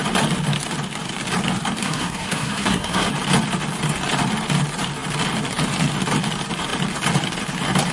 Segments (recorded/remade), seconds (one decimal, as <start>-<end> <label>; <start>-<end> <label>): 0.0-1.8 recorded; 1.8-3.1 remade; 3.1-7.9 recorded